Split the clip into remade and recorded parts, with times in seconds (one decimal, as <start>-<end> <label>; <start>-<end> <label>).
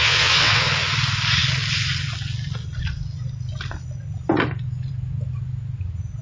0.0-0.6 remade; 0.6-6.2 recorded